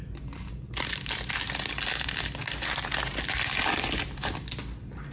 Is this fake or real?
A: real